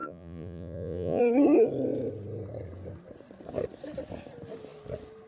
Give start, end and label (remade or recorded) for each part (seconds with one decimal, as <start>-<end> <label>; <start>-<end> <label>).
0.0-1.2 remade; 1.2-5.3 recorded